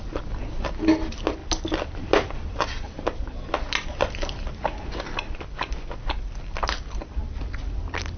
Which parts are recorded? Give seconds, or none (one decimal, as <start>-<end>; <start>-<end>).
0.0-8.2